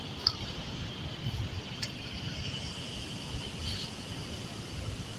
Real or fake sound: real